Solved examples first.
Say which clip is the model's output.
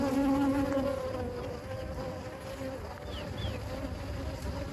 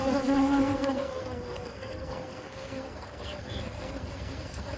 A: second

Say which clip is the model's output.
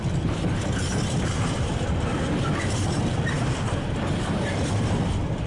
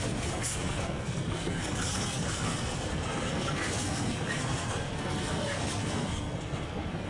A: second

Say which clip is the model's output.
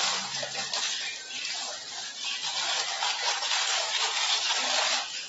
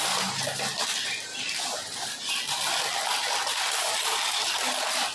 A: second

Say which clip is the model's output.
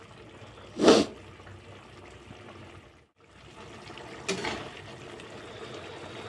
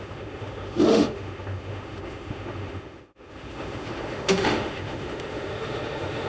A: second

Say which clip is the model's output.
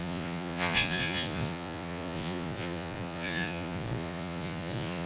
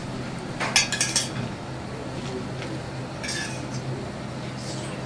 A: first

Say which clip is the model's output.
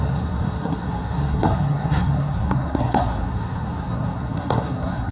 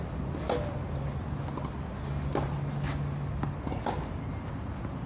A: first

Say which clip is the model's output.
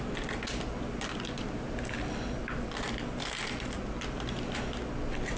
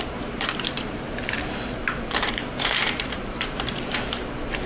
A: second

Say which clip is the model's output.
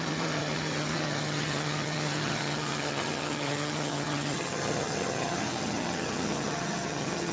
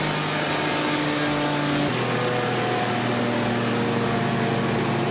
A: first